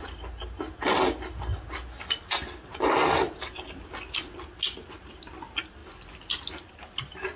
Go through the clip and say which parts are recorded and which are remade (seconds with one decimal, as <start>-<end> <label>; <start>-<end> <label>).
0.0-7.4 recorded